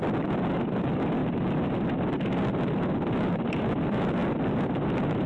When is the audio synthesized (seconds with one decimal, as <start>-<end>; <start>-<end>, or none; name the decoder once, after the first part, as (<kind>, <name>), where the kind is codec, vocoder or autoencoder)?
none